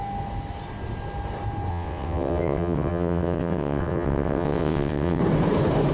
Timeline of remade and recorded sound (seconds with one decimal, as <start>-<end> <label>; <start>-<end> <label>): 0.0-1.7 recorded; 1.7-5.2 remade; 5.2-5.9 recorded